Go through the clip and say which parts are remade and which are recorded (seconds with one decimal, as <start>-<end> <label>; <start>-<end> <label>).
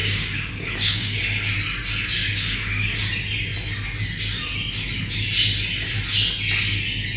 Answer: 0.0-1.2 remade; 1.2-2.2 recorded; 2.2-3.0 remade; 3.0-7.2 recorded